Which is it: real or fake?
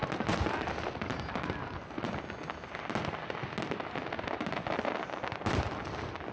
real